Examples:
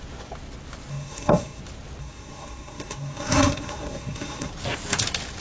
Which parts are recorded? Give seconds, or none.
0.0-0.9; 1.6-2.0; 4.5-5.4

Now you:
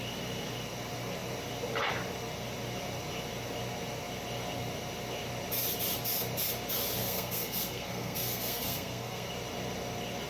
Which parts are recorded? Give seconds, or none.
0.0-7.0; 9.3-10.3

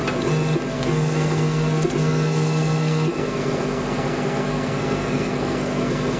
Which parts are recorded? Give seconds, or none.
0.0-0.7

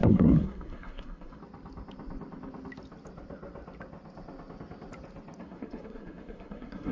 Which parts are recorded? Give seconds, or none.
1.4-5.4

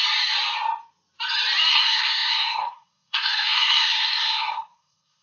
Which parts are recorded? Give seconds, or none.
0.0-1.7

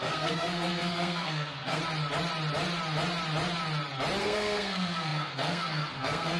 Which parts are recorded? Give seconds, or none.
1.8-4.2

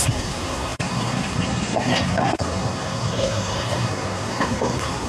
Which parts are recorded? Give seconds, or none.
none